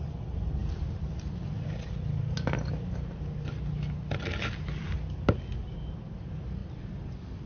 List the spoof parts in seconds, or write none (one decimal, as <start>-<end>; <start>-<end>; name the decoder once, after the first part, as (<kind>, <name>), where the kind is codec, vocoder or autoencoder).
6.6-7.5 (vocoder, BigVGAN v2)